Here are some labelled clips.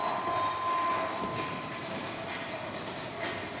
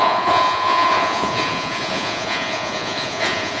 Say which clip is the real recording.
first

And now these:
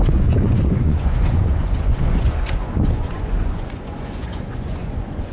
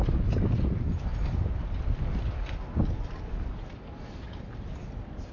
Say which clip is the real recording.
second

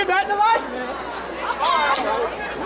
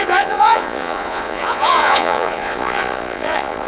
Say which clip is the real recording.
first